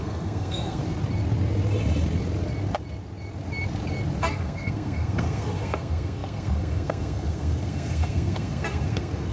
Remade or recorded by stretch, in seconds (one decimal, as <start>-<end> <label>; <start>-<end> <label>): 0.0-0.8 remade; 0.8-4.2 recorded; 4.2-9.3 remade